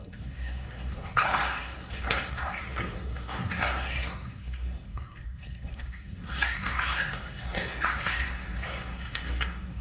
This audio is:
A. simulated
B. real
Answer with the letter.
A